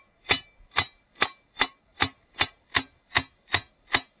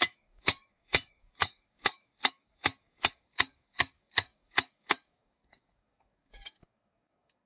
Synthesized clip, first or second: second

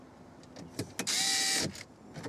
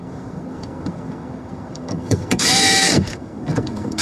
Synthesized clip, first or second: second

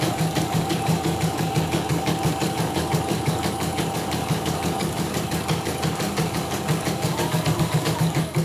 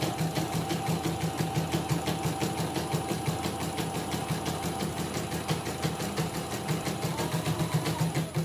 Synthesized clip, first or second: first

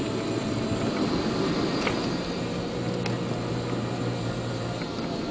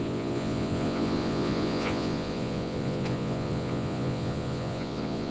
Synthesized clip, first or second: second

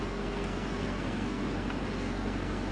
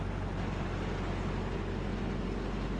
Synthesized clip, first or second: first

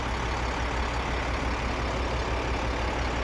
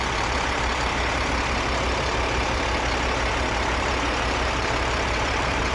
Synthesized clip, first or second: second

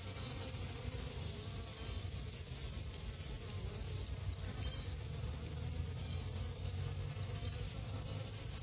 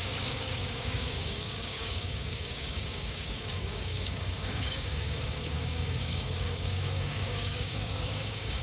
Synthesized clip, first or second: second